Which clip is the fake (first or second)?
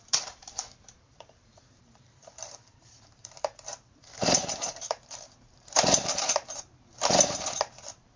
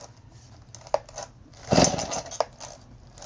first